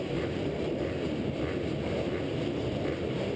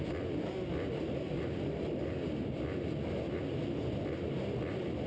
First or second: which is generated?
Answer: first